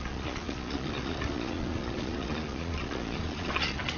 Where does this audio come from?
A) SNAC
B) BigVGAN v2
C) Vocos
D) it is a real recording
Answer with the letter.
C